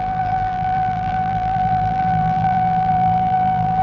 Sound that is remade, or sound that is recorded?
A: remade